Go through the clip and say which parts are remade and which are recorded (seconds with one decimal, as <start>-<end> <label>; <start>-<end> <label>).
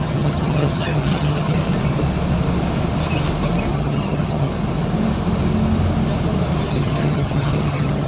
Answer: 0.0-1.6 remade; 1.6-3.7 recorded; 3.7-4.5 remade; 4.5-6.7 recorded; 6.7-8.1 remade